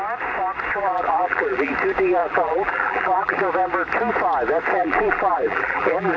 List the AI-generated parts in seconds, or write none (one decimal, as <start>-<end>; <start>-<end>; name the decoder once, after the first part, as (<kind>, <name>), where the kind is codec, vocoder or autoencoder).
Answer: 0.8-1.7 (vocoder, BigVGAN v2); 2.2-3.4; 4.7-6.2